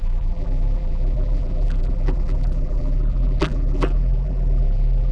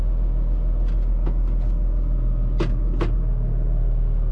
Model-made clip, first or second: first